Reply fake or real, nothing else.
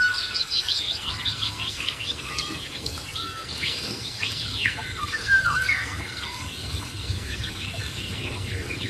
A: fake